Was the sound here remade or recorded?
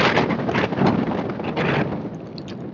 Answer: recorded